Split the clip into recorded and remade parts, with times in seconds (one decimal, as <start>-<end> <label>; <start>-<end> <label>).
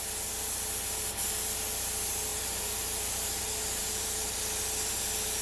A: 0.0-2.3 recorded; 2.3-3.4 remade; 3.4-3.8 recorded; 3.8-4.3 remade; 4.3-5.4 recorded